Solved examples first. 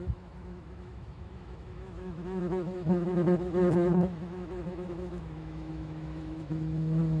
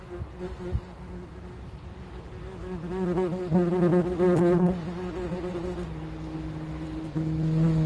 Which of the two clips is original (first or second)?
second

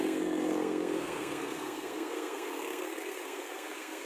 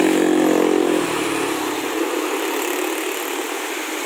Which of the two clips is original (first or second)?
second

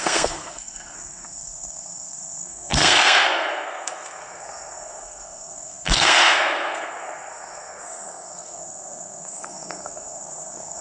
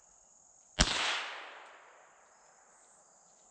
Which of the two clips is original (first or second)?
second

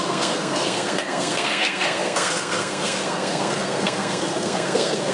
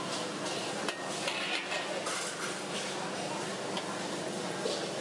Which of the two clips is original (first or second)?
second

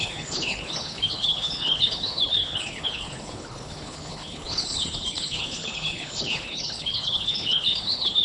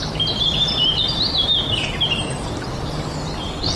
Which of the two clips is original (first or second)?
second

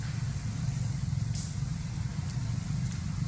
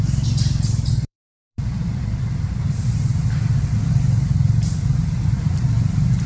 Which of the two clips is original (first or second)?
first